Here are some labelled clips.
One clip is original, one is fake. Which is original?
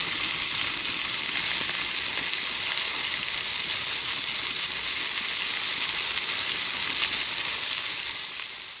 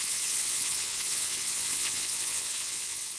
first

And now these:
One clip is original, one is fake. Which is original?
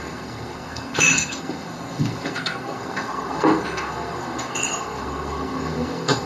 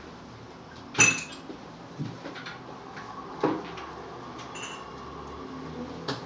second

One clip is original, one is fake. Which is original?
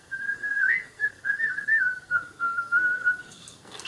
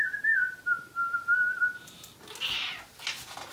second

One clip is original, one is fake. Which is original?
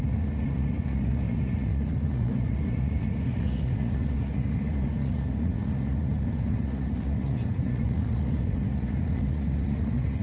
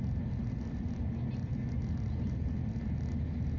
second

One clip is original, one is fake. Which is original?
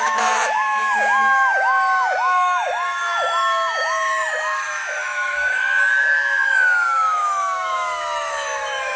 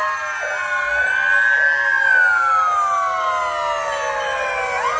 second